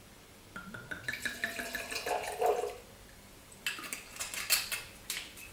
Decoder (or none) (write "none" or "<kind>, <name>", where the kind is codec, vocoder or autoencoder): none